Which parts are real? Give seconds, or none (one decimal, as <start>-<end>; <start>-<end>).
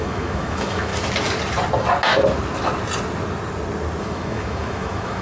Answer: 0.9-4.0